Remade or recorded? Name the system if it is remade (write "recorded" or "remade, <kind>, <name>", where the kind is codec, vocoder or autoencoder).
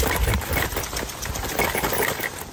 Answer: recorded